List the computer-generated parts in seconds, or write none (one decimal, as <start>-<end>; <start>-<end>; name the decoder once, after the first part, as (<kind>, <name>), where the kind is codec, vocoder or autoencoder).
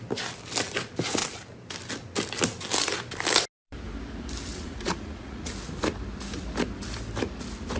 4.5-5.5 (vocoder, Vocos)